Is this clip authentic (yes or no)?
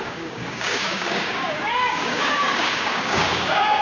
no